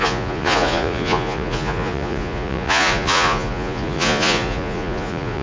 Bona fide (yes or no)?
no